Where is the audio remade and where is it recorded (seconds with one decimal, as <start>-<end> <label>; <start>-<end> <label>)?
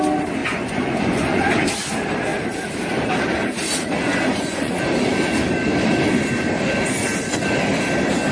0.0-0.4 recorded; 0.4-1.5 remade; 1.5-4.0 recorded; 4.0-4.8 remade; 4.8-8.3 recorded